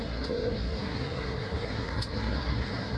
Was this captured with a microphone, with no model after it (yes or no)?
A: no